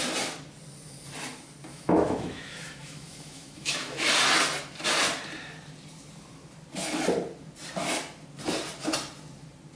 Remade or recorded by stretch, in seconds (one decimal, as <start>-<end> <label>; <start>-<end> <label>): 0.0-1.7 recorded; 1.7-4.1 remade; 4.1-9.8 recorded